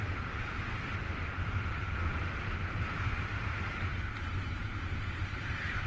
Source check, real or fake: real